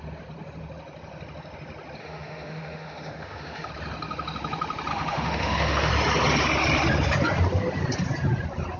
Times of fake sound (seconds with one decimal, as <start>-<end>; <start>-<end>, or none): 2.0-3.7; 4.9-5.9